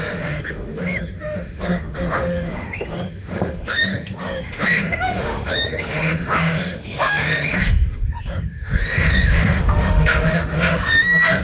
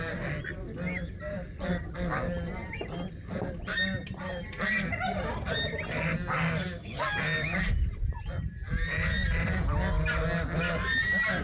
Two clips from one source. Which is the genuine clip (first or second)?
second